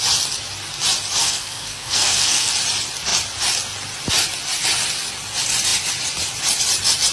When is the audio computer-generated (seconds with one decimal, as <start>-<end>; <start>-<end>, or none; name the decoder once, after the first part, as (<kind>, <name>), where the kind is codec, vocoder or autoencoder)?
1.2-2.5 (codec, SNAC)